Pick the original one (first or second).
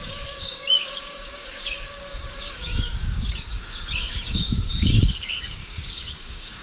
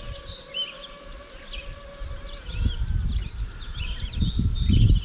second